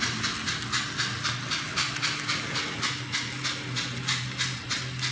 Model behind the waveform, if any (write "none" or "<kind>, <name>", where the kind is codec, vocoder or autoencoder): none